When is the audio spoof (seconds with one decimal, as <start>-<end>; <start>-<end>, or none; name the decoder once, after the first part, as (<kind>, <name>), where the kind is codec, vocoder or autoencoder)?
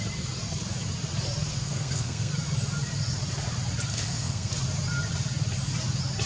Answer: 1.5-2.3 (codec, SNAC); 3.9-4.5